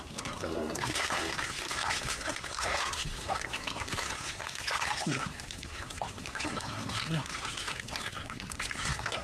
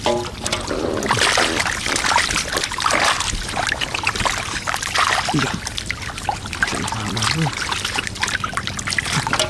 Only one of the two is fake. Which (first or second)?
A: first